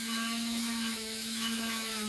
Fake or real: fake